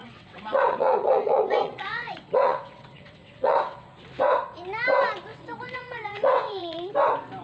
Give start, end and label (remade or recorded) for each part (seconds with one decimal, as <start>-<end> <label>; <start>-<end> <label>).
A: 0.0-3.9 remade; 3.9-5.3 recorded; 5.3-6.9 remade; 6.9-7.4 recorded